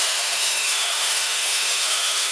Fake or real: fake